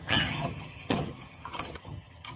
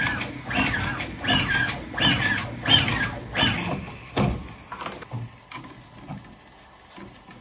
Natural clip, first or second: second